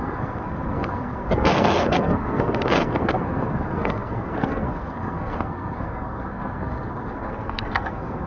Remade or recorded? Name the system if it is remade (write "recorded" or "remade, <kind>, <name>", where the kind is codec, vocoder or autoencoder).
remade, codec, SNAC